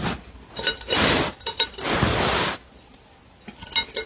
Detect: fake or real real